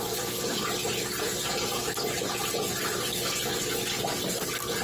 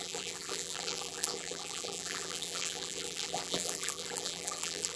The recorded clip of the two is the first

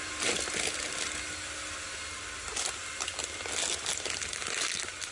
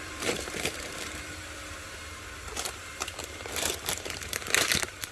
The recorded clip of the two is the first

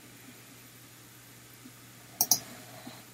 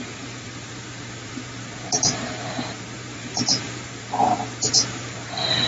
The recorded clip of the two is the first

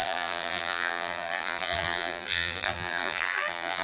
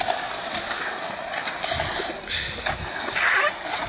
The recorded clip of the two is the second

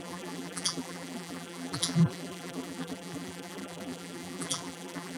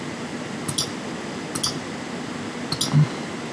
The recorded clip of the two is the second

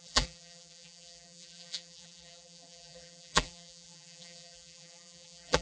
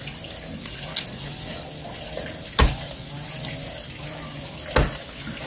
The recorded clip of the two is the second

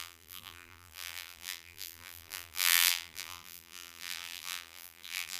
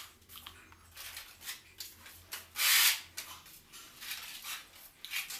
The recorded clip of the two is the second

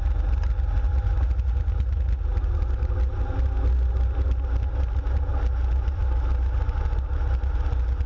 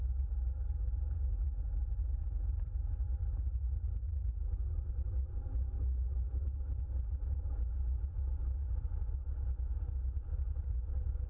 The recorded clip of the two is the first